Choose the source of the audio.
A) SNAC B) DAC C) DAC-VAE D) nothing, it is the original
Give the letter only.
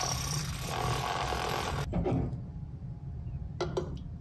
D